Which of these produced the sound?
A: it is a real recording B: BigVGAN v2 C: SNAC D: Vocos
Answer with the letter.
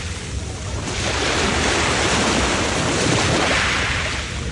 B